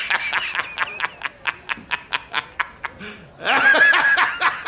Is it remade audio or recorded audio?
recorded